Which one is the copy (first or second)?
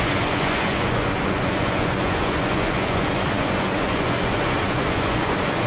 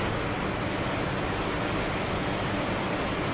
first